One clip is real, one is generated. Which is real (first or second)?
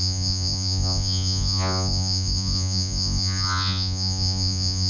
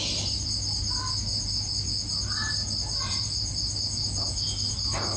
second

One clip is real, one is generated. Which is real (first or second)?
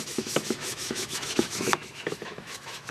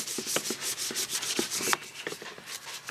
second